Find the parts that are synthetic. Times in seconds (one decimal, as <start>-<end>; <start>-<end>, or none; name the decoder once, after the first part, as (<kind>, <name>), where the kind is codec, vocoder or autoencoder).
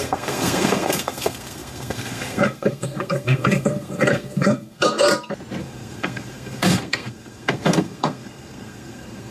0.0-5.1 (codec, SNAC); 5.6-9.3